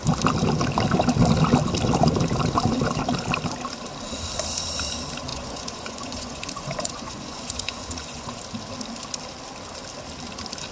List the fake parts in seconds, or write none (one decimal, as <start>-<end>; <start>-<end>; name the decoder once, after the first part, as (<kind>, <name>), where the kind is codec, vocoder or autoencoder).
5.3-8.4 (vocoder, Vocos)